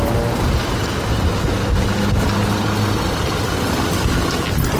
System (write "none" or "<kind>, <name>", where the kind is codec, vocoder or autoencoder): none